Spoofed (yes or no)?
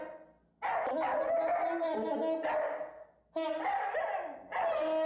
no